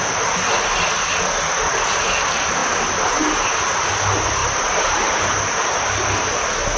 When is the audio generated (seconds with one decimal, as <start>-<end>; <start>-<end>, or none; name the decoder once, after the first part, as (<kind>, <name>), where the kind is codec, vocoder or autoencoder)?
4.4-5.3 (vocoder, BigVGAN v2)